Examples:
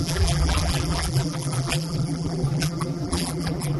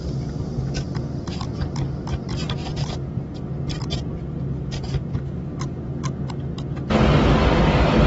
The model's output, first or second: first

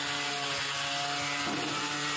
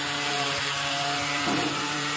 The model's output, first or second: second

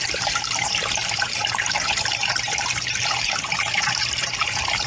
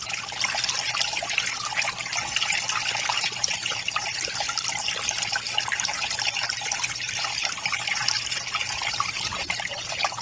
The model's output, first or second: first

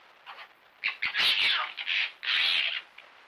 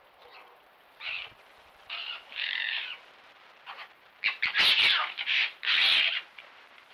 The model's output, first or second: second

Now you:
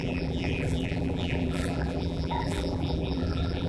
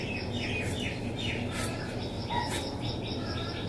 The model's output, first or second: first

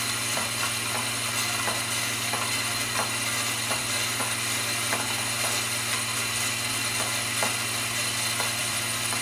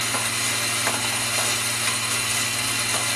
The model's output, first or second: first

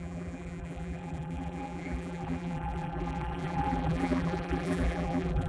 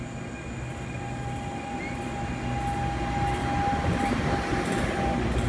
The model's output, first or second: first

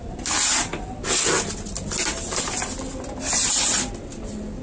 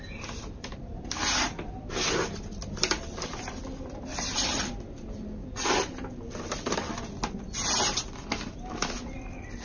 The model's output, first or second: second